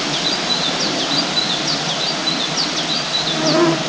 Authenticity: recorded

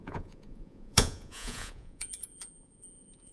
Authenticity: remade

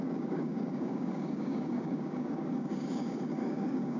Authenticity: remade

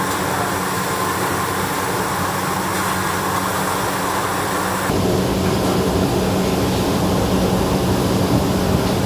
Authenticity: recorded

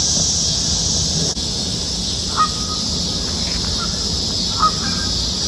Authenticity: recorded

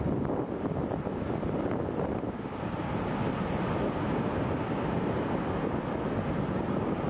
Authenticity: recorded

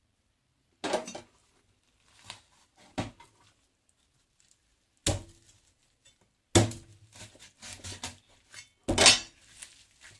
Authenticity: recorded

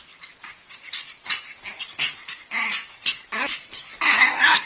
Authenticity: recorded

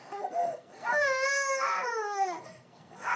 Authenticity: remade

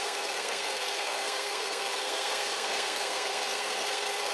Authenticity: remade